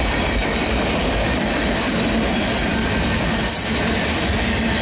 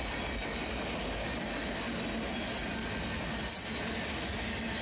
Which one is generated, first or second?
first